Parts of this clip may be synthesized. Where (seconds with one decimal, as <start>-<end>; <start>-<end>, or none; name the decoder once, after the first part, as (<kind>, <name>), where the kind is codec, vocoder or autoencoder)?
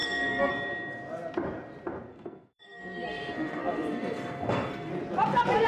0.0-0.5 (codec, SNAC); 2.1-4.9